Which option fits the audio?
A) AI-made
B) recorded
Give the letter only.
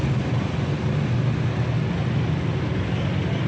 B